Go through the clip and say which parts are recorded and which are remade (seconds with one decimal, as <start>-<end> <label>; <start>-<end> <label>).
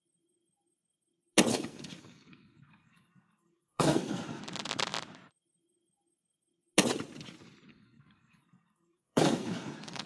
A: 0.0-1.5 recorded; 1.5-4.4 remade; 4.4-7.7 recorded; 7.7-10.1 remade